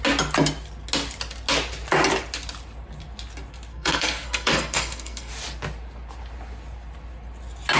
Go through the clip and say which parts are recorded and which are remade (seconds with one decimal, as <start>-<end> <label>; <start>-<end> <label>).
0.0-3.7 recorded; 3.7-5.3 remade; 5.3-7.8 recorded